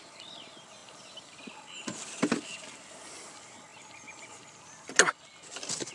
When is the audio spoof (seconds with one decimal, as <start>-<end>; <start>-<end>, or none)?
none